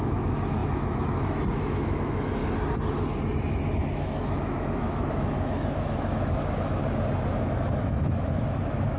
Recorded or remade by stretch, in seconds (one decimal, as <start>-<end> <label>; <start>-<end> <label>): 0.0-2.4 remade; 2.4-3.8 recorded; 3.8-6.8 remade; 6.8-7.4 recorded; 7.4-9.0 remade